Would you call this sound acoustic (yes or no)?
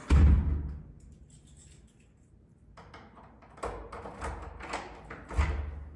yes